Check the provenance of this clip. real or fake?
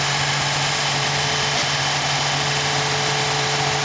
real